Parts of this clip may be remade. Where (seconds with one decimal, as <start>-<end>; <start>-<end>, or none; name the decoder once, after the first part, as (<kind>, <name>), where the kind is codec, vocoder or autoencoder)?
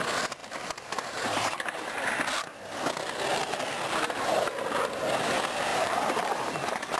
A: 0.4-2.1 (vocoder, BigVGAN v2); 5.7-7.0